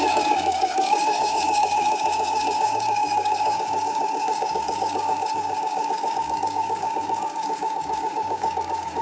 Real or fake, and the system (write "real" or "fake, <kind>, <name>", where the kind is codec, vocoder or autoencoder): fake, codec, DAC